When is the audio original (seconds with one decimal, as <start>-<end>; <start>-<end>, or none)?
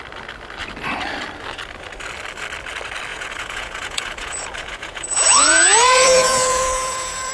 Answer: 0.0-3.1